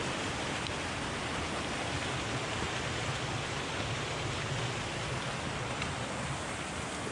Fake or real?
real